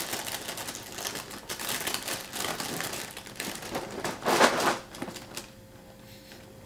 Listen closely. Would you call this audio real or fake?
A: real